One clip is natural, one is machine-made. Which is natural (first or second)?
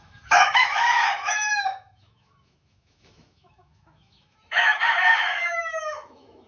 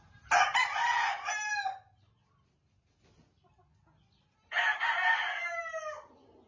second